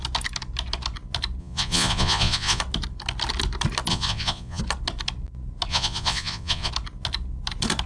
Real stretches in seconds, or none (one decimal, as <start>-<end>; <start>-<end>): 0.0-1.4; 2.6-3.9; 4.6-5.7; 6.7-7.9